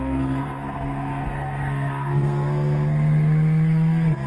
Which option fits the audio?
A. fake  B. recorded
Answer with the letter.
A